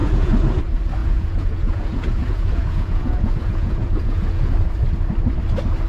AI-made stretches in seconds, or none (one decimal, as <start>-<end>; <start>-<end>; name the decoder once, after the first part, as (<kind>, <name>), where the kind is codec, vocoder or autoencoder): 0.0-0.6 (vocoder, Vocos); 1.0-4.5